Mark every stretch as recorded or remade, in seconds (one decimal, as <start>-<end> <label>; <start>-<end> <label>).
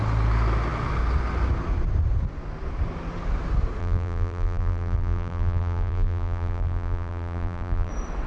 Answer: 0.0-3.8 recorded; 3.8-7.9 remade; 7.9-8.3 recorded